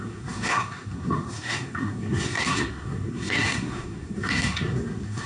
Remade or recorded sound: remade